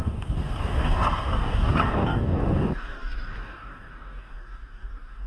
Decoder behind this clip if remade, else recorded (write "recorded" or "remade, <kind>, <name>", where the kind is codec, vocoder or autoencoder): remade, codec, DAC